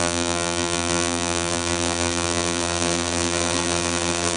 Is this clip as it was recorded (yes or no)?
no